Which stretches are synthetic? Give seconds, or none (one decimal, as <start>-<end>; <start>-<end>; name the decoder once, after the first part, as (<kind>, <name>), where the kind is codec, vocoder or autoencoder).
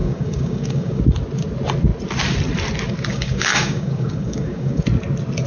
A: 0.0-1.0 (codec, DAC); 3.1-4.8